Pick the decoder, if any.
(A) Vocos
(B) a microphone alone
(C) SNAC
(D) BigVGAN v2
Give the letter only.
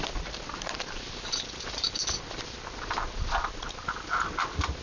B